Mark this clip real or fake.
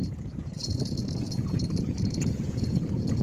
fake